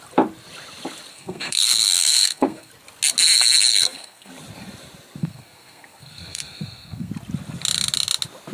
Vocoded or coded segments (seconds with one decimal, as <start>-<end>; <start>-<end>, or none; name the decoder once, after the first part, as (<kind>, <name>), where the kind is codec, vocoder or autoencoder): 1.1-2.7 (codec, SNAC); 3.7-4.3; 5.2-7.1